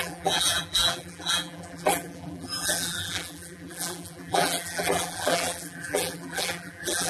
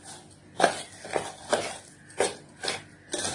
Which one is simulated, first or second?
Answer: first